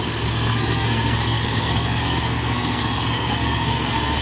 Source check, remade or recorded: remade